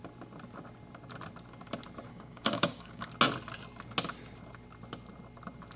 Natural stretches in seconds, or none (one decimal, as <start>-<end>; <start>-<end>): 0.0-2.1; 3.1-5.8